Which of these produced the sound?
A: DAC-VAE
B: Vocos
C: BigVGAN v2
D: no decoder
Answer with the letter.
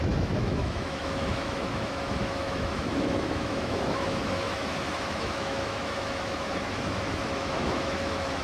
A